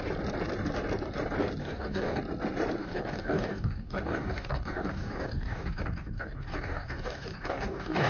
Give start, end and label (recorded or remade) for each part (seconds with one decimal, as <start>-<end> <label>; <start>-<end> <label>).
0.0-1.6 recorded; 1.6-2.2 remade; 2.2-2.8 recorded; 2.8-8.1 remade